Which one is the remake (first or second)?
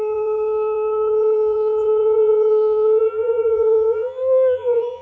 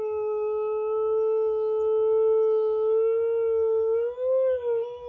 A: first